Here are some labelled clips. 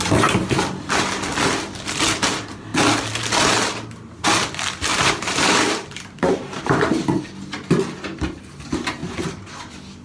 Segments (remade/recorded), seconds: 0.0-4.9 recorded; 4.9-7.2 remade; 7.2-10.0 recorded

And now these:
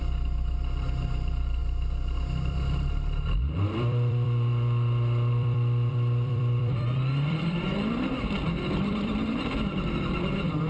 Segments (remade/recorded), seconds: 0.0-1.6 remade; 1.6-3.5 recorded; 3.5-10.7 remade